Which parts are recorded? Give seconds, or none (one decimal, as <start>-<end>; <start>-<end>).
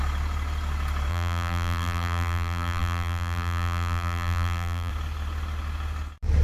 0.0-1.1; 4.9-6.4